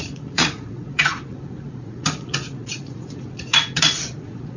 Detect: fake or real fake